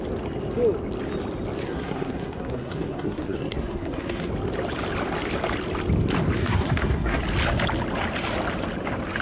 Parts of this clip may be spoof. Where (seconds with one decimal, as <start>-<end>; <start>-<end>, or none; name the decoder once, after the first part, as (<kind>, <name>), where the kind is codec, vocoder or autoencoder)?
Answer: 1.6-4.3 (codec, SNAC); 6.4-7.2